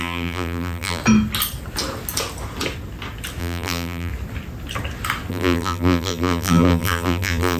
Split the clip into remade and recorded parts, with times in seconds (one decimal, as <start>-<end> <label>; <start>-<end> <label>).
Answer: 0.0-1.0 remade; 1.0-3.4 recorded; 3.4-4.1 remade; 4.1-5.3 recorded; 5.3-7.6 remade